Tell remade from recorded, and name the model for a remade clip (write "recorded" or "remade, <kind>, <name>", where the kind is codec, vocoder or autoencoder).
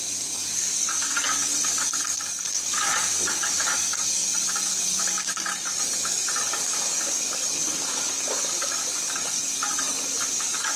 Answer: remade, codec, DAC